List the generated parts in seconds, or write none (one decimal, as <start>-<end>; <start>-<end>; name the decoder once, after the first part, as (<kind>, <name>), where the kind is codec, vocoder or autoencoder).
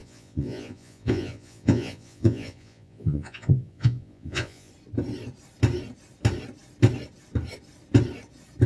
0.0-4.7 (vocoder, Vocos)